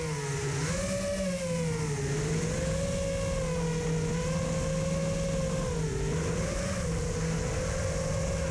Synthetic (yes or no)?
no